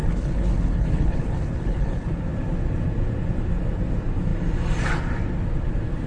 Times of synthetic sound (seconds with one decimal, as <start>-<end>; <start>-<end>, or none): 0.0-2.1